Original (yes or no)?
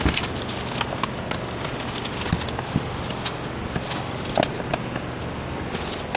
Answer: yes